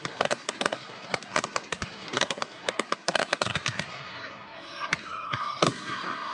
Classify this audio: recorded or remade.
remade